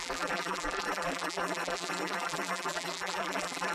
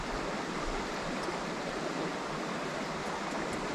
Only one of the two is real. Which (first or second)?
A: second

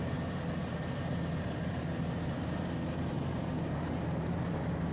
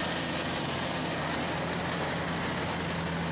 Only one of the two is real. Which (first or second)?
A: second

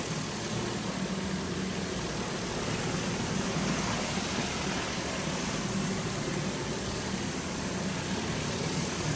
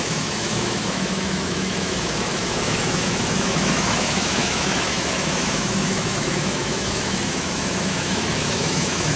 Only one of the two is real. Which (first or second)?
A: first